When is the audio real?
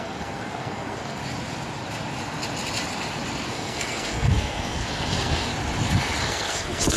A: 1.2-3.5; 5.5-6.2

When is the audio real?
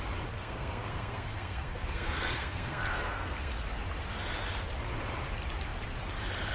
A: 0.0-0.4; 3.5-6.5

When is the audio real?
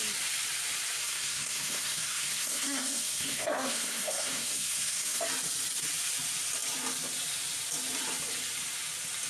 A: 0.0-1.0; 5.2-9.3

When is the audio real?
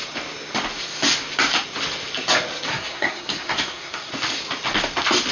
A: 0.0-2.7; 4.1-5.3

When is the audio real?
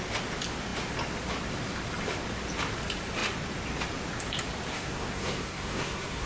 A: 0.0-4.7